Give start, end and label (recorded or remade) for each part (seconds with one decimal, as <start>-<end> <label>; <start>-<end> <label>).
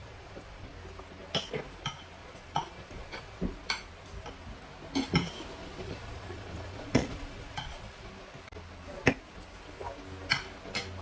0.0-0.7 remade; 0.7-2.2 recorded; 2.2-3.4 remade; 3.4-5.6 recorded; 5.6-8.1 remade; 8.1-11.0 recorded